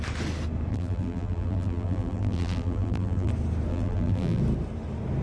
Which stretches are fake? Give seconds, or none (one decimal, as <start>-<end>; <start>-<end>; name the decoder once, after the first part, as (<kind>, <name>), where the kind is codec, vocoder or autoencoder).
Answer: 0.7-3.3 (vocoder, BigVGAN v2); 3.7-4.4

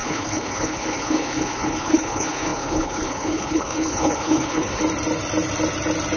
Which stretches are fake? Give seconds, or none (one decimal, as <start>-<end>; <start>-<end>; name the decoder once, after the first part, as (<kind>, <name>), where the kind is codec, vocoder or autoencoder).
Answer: 0.0-4.8 (codec, HILCodec)

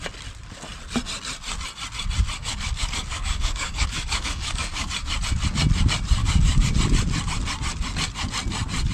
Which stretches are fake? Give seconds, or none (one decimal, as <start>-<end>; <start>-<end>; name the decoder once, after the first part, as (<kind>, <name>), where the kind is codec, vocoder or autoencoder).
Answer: 2.4-4.9 (codec, DAC); 6.2-6.7

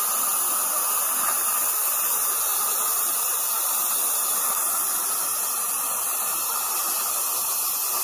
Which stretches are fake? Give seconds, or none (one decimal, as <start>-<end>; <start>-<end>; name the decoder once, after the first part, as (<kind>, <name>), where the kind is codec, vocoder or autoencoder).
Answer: none

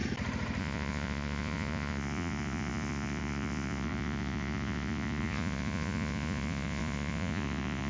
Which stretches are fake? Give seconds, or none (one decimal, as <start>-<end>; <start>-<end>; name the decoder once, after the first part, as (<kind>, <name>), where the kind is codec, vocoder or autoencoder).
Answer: 0.6-7.9 (vocoder, Vocos)